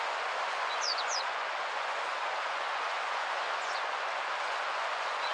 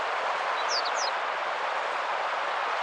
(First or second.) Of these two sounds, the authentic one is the second